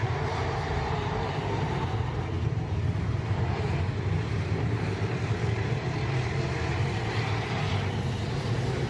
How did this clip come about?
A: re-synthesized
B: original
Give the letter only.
A